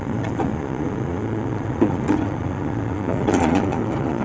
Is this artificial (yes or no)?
yes